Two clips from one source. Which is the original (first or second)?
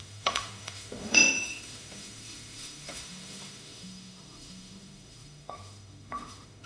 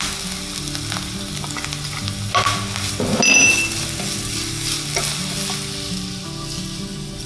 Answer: second